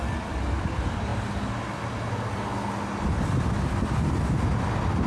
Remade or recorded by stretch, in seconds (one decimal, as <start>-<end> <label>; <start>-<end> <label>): 0.0-5.1 recorded